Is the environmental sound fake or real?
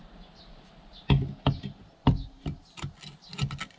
real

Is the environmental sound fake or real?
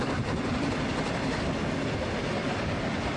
real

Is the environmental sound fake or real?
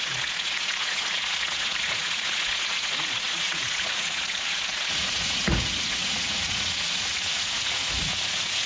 fake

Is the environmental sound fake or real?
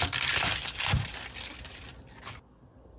real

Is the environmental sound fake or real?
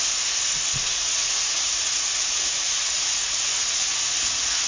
fake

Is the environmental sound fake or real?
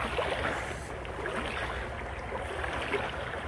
real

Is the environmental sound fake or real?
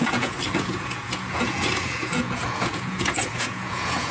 fake